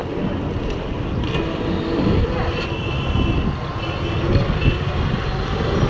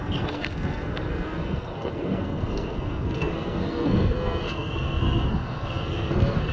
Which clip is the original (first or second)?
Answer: first